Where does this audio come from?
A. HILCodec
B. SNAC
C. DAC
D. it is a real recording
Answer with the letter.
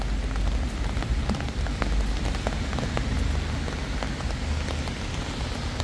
D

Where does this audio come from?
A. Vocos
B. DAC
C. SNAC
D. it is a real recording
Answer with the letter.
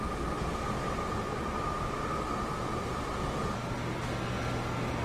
D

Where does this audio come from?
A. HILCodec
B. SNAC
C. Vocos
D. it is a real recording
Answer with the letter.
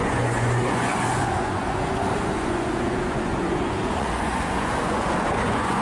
C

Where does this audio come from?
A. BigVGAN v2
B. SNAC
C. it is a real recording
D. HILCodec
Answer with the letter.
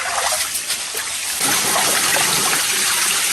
C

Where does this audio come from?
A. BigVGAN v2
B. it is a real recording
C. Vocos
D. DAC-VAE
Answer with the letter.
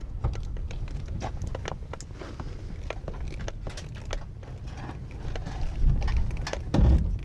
B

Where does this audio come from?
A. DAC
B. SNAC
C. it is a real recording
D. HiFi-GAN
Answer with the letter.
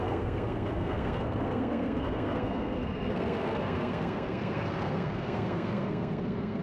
B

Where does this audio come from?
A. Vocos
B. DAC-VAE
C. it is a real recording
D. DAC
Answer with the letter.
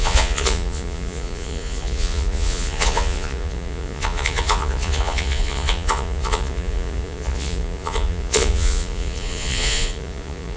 A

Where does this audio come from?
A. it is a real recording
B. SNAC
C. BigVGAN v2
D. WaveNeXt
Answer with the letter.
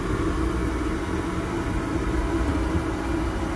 A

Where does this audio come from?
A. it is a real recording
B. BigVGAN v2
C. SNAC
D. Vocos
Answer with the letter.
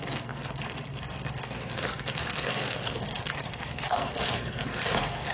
C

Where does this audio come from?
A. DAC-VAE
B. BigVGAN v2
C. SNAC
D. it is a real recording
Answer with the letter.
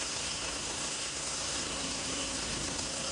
C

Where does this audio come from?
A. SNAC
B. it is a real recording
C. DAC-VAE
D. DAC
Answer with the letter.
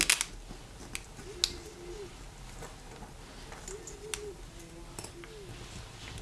B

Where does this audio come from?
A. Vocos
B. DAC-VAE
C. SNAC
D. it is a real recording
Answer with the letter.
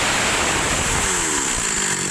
D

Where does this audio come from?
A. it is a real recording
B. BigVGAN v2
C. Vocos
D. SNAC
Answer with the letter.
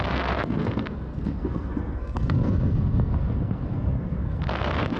D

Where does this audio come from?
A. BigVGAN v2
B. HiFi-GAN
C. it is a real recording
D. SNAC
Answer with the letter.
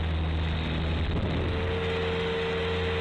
C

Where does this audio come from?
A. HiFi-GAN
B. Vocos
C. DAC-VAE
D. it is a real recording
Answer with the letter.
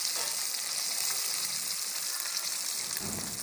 D